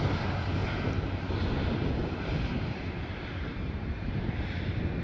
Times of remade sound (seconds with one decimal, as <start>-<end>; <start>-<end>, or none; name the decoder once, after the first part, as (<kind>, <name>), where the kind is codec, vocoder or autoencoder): 2.0-4.2 (vocoder, BigVGAN v2)